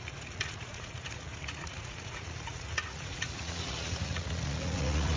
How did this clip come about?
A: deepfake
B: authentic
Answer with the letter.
A